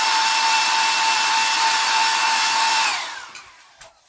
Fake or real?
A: fake